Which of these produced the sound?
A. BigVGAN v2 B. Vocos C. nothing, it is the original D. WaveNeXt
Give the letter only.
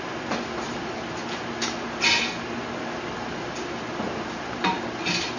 C